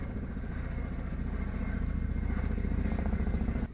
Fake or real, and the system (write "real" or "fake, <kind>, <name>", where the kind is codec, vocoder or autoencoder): real